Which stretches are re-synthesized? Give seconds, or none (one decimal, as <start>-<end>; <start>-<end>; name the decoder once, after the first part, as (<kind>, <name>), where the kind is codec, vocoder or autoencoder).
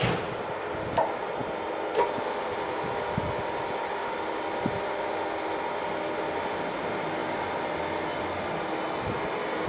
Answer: none